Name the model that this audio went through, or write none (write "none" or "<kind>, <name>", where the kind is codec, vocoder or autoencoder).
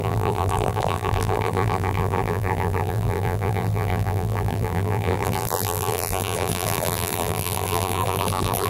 vocoder, BigVGAN v2